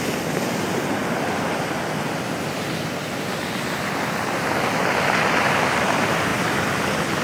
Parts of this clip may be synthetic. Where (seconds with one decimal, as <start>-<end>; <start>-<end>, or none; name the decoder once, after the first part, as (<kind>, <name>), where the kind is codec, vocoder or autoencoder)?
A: none